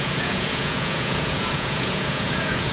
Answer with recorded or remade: remade